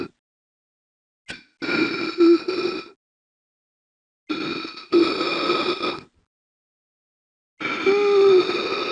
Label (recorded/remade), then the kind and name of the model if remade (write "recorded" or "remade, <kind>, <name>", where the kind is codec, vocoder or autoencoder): recorded